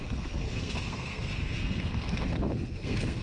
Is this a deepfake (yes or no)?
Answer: yes